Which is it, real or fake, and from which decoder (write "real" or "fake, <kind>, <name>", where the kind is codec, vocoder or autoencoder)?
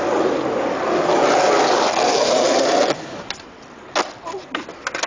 real